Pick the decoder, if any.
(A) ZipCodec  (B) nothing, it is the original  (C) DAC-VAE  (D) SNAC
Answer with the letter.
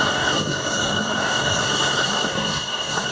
D